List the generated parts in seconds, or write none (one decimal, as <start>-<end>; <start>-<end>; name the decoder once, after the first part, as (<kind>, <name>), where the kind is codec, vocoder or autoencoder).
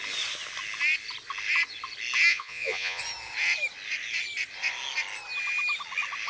2.3-3.0 (vocoder, Vocos)